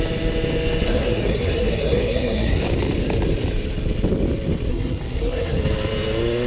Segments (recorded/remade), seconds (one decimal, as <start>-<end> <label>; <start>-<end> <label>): 0.0-0.8 recorded; 0.8-2.6 remade; 2.6-4.7 recorded; 4.7-5.6 remade; 5.6-6.5 recorded